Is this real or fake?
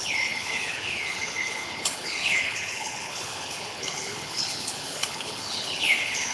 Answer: fake